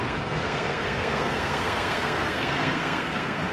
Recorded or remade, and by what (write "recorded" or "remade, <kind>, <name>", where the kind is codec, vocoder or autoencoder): remade, codec, SNAC